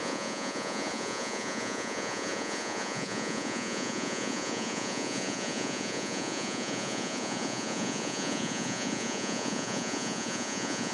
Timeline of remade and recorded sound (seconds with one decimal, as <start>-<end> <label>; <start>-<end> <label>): 0.0-10.9 remade